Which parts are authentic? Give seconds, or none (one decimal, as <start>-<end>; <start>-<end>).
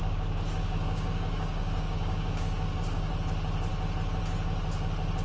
3.1-5.2